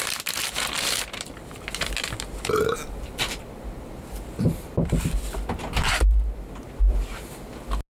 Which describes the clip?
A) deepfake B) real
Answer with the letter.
B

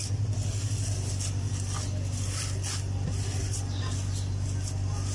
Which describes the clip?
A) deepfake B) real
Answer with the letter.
B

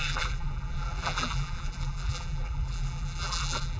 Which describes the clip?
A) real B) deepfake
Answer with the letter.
B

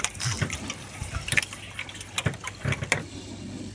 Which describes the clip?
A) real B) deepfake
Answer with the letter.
A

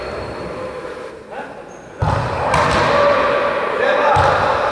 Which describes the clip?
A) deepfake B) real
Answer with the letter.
B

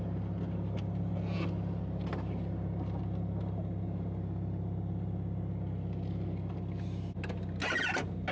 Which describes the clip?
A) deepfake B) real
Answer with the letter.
B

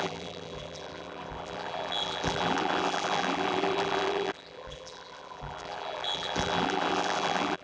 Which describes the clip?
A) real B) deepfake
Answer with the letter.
B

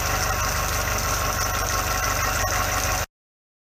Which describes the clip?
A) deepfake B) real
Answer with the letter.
B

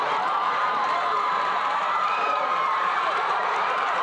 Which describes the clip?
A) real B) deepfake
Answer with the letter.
B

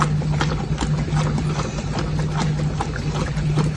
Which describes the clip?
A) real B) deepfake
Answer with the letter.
A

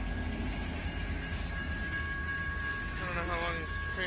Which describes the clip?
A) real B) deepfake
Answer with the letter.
A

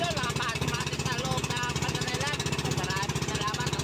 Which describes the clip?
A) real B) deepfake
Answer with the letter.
A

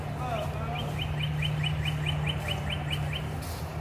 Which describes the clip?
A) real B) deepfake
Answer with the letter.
A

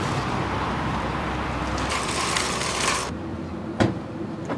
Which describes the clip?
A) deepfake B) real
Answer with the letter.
A